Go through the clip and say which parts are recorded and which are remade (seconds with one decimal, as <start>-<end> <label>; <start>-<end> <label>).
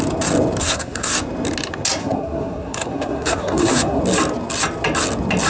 0.0-0.6 recorded; 0.6-1.1 remade; 1.1-2.0 recorded; 2.0-4.0 remade; 4.0-5.5 recorded